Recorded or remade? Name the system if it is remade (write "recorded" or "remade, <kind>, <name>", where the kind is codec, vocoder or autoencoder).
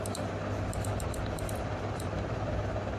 remade, vocoder, BigVGAN v2